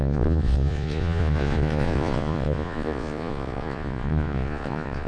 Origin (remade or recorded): remade